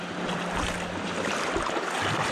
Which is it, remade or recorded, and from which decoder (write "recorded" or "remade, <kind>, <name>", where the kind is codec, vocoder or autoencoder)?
recorded